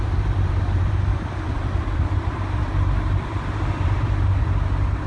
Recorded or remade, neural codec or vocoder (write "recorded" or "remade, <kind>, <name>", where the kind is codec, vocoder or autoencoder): remade, vocoder, BigVGAN v2